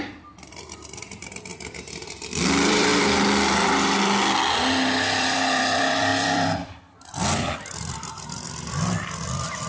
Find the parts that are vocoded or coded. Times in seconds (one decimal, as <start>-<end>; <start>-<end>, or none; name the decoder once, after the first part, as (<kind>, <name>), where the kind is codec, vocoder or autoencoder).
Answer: 0.0-1.5 (vocoder, BigVGAN v2); 2.4-2.9; 5.2-9.7